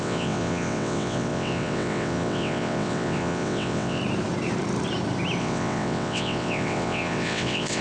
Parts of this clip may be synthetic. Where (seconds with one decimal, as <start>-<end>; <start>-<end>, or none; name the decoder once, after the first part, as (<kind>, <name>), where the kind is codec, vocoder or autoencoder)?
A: 0.0-4.0 (vocoder, WaveNeXt); 5.4-7.8